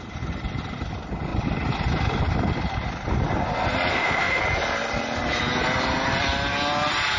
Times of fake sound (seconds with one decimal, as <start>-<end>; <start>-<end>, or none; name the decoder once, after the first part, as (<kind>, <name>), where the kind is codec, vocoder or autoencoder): 3.9-4.4 (autoencoder, DAC-VAE)